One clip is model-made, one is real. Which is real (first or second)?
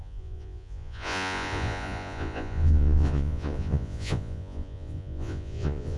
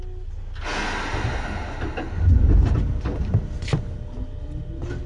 second